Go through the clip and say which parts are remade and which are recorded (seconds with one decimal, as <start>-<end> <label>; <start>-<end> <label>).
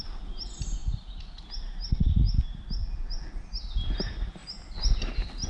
0.0-2.8 recorded; 2.8-3.3 remade; 3.3-5.5 recorded